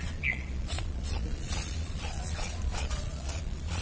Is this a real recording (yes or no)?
no